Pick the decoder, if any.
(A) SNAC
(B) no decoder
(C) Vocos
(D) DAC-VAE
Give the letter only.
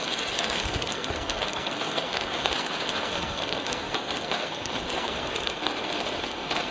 A